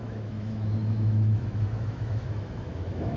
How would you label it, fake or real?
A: fake